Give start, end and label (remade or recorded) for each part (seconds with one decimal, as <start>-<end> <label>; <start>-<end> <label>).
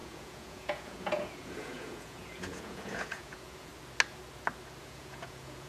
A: 0.0-3.7 remade; 3.7-4.8 recorded; 4.8-5.7 remade